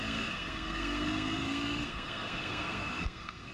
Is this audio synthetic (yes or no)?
yes